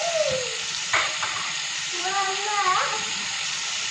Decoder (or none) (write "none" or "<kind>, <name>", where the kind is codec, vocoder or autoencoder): vocoder, BigVGAN v2